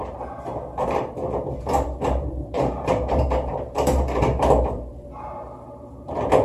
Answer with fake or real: fake